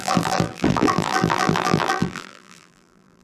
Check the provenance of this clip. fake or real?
fake